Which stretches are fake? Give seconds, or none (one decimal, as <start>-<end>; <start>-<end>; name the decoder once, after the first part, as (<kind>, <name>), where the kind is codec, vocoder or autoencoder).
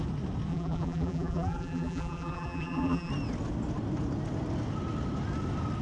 0.5-3.1 (vocoder, BigVGAN v2)